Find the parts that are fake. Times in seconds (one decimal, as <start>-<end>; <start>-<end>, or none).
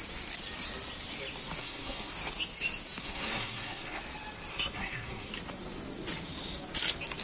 1.6-2.1; 3.0-4.0; 4.5-5.3